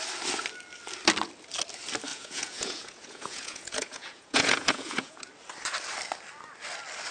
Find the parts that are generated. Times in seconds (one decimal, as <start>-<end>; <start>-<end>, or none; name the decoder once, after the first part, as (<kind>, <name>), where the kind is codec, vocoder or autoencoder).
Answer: 2.1-5.3 (vocoder, Vocos)